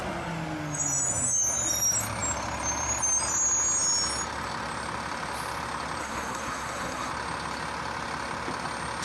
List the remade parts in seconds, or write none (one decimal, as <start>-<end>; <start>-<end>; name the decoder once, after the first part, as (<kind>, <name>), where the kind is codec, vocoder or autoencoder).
6.0-7.1 (codec, SNAC)